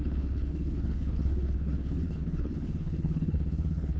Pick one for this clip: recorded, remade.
remade